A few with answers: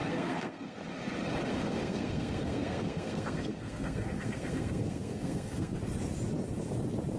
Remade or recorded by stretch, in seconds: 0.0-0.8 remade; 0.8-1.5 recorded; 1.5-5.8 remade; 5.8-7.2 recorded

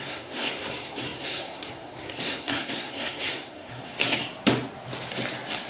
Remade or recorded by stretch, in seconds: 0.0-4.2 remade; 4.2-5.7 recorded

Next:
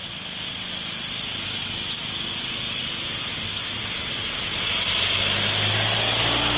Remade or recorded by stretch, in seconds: 0.0-6.6 recorded